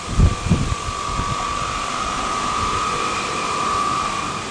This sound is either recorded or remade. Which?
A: recorded